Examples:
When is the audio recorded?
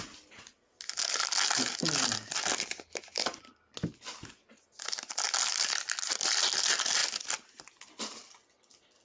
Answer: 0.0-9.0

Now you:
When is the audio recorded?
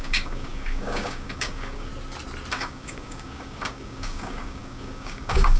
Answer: 1.9-2.5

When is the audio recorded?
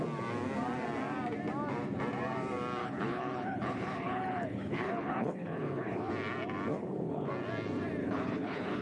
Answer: 0.0-2.8; 6.1-6.7; 7.3-8.0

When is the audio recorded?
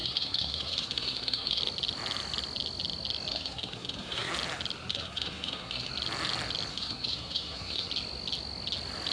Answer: 1.6-3.3; 4.3-4.9; 5.9-6.7; 7.9-9.1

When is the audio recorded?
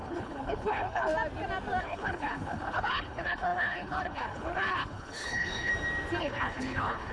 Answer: 1.1-1.8; 5.7-6.2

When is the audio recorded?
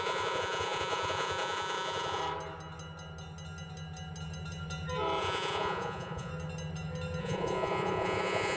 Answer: 2.2-5.2; 6.3-7.2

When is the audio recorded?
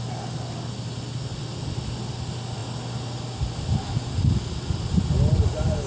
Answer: 0.0-5.9